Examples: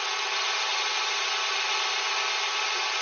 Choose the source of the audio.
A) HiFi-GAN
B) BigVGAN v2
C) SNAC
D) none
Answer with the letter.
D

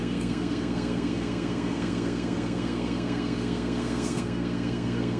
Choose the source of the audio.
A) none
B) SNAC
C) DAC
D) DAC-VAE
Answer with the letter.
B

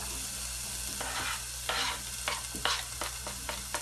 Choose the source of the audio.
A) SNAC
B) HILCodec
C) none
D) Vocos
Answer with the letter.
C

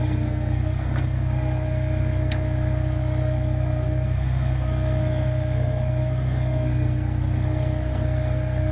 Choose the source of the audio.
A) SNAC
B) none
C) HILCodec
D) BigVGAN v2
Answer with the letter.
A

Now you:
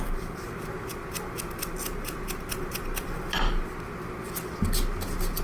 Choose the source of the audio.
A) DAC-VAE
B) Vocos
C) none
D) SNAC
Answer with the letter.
C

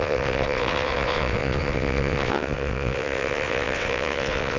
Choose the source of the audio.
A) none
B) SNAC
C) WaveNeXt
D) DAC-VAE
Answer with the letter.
C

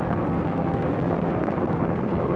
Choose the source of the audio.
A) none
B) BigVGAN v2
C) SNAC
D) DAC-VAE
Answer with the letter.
C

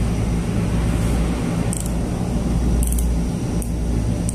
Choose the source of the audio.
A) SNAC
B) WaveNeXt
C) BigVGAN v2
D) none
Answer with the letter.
D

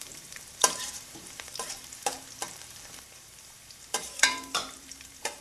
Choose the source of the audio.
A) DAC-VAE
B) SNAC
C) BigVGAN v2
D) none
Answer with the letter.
C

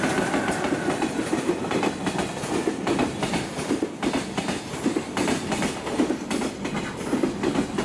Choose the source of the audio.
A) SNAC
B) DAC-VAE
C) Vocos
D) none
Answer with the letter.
D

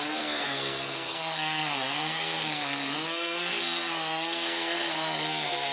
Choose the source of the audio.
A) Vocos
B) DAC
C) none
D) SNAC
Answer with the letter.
D